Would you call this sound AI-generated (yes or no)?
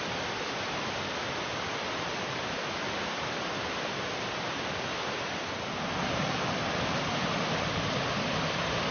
no